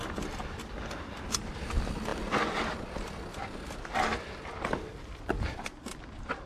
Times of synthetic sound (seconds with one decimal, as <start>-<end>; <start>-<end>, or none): none